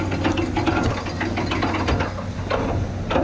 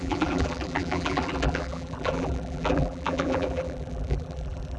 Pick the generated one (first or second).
second